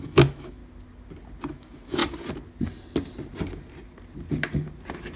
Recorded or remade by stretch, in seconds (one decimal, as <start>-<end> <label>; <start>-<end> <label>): 0.0-0.6 remade; 0.6-1.5 recorded; 1.5-2.0 remade; 2.0-5.2 recorded